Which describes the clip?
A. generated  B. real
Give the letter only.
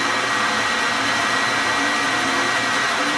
B